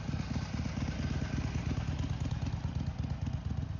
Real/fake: real